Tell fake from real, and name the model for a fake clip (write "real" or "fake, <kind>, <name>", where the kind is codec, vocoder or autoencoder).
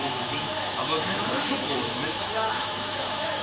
fake, autoencoder, DAC-VAE